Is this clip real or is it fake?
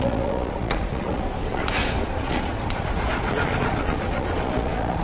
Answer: fake